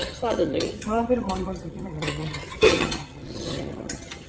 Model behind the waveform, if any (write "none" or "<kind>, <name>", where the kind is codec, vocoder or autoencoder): vocoder, HiFi-GAN